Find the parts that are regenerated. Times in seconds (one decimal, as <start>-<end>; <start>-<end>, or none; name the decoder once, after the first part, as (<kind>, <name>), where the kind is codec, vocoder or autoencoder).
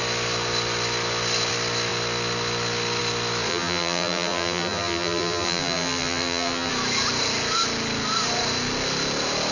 3.5-6.7 (vocoder, BigVGAN v2)